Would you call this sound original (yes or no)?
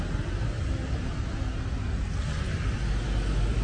yes